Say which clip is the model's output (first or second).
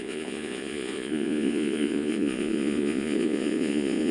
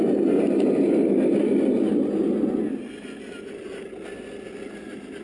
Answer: first